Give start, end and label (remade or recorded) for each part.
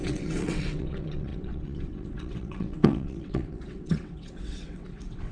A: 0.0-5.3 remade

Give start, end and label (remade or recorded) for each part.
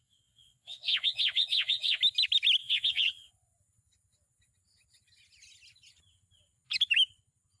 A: 0.0-2.0 remade; 2.0-2.6 recorded; 2.6-3.3 remade; 3.3-7.6 recorded